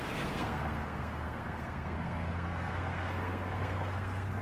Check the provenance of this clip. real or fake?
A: fake